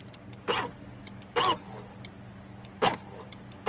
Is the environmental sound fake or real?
real